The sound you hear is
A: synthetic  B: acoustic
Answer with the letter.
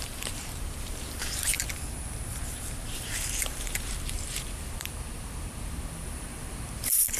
A